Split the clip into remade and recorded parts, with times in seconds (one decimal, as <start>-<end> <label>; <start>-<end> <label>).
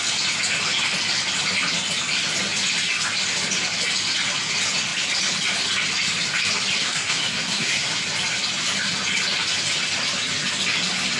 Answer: 0.0-6.8 recorded; 6.8-8.0 remade; 8.0-11.2 recorded